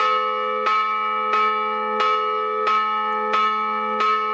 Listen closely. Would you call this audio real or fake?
real